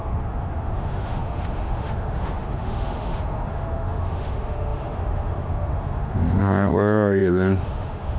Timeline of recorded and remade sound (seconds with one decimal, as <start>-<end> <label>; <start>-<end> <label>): 0.0-8.2 remade